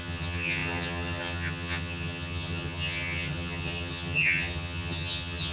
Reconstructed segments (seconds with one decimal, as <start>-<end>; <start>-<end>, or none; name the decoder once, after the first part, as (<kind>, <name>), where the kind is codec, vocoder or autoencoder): 0.0-5.5 (vocoder, HiFi-GAN)